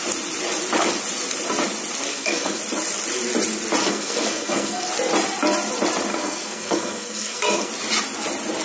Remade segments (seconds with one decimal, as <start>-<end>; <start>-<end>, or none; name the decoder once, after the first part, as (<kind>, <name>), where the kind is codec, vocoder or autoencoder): 2.1-2.6 (codec, SNAC); 3.8-4.9; 6.1-7.7